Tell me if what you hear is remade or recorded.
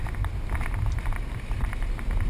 recorded